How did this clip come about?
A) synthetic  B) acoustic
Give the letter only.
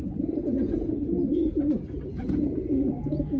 B